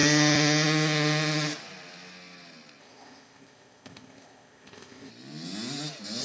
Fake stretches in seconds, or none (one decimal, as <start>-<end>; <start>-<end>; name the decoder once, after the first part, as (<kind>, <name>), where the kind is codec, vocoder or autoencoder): 2.8-5.1 (codec, ZipCodec)